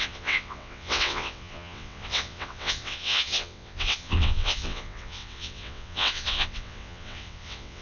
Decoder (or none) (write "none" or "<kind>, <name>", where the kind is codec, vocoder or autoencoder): vocoder, WaveNeXt